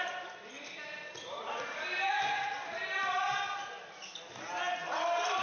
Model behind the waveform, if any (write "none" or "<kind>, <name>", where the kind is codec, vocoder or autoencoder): none